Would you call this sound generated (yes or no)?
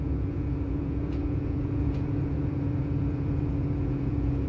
yes